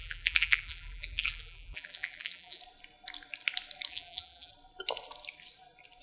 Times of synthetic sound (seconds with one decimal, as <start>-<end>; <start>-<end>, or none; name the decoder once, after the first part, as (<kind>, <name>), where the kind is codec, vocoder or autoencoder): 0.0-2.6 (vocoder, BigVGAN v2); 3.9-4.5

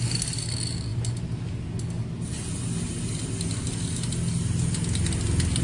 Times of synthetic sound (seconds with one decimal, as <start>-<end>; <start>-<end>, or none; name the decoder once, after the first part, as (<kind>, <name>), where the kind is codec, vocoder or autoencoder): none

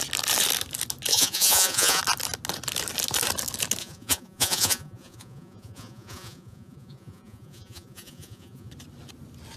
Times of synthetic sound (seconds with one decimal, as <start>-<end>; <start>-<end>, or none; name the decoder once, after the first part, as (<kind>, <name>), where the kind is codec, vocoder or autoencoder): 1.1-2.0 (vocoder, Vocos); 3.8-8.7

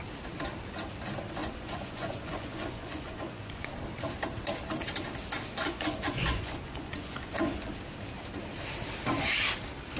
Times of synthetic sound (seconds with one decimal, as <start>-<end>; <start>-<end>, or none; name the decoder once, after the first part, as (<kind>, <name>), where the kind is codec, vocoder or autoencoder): 1.4-3.7 (vocoder, Vocos); 5.6-7.7

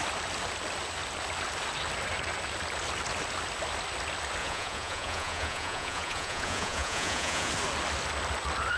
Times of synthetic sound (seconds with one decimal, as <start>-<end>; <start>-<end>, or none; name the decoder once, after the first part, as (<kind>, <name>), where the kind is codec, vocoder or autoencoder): 4.4-7.5 (vocoder, Vocos)